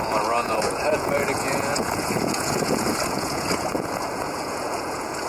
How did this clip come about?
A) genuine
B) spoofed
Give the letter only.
B